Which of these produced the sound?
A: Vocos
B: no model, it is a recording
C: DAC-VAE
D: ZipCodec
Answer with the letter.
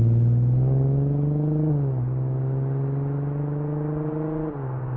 B